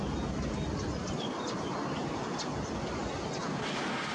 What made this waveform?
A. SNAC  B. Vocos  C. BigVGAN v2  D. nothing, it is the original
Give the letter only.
D